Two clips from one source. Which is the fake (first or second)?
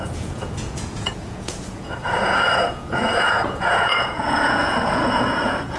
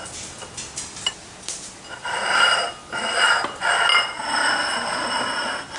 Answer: first